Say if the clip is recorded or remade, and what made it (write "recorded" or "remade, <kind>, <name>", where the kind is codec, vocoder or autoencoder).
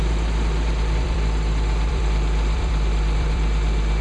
remade, vocoder, BigVGAN v2